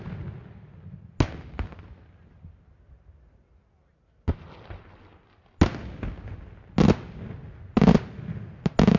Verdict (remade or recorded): recorded